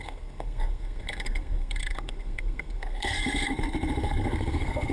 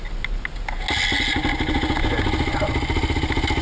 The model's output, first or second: first